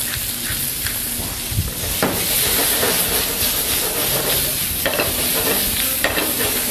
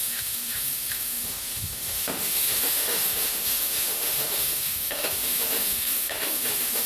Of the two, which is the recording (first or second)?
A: first